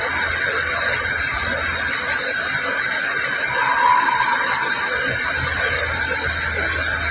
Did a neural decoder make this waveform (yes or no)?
no